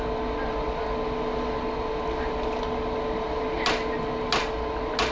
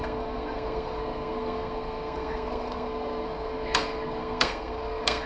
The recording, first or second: first